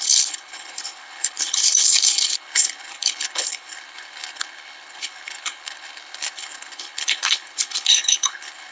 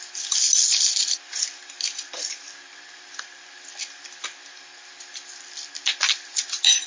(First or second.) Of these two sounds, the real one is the second